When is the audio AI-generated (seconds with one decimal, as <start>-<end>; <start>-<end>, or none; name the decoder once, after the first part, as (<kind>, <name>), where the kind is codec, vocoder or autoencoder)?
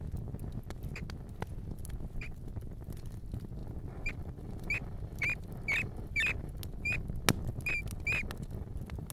none